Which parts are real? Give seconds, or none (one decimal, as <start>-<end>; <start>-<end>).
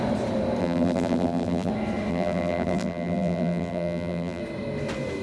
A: 0.0-0.6; 1.7-2.1; 4.4-5.2